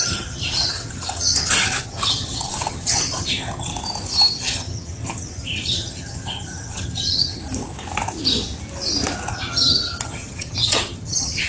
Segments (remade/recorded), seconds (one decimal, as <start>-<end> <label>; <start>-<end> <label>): 0.0-3.7 remade; 3.7-4.4 recorded; 4.4-7.4 remade; 7.4-9.3 recorded; 9.3-11.5 remade